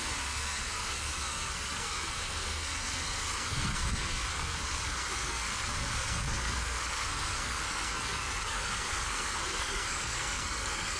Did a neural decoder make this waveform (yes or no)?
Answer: yes